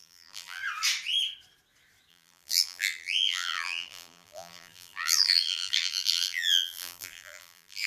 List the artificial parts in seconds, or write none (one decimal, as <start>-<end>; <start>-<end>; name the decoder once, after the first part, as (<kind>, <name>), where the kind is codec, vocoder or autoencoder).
0.0-0.6 (vocoder, BigVGAN v2); 2.1-7.9